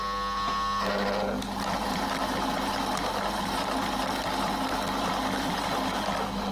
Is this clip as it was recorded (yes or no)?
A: yes